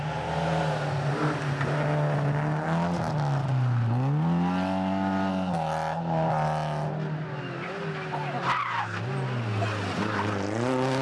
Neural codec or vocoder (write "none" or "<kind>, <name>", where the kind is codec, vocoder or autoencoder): none